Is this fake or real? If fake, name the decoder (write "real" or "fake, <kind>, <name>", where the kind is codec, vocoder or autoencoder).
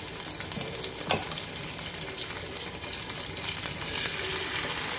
real